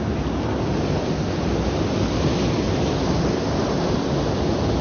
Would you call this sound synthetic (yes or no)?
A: no